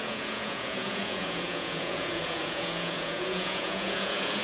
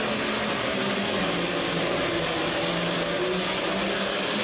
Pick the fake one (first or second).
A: first